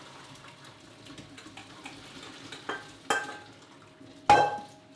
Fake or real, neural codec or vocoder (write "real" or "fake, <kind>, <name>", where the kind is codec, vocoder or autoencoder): real